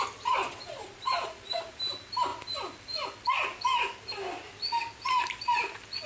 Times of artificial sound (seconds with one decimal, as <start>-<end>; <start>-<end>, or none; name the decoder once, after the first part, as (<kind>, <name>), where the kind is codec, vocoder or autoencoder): 0.4-1.6 (vocoder, Vocos)